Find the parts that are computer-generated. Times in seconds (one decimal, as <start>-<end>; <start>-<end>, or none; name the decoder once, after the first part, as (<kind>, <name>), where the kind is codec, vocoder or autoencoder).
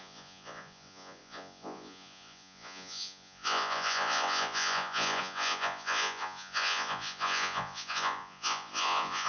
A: 0.0-9.3 (vocoder, Vocos)